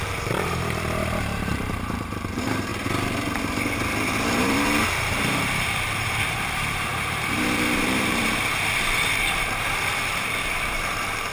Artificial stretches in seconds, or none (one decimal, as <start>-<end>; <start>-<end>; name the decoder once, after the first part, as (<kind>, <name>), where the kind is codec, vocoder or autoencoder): 0.0-2.7 (vocoder, BigVGAN v2); 4.3-11.3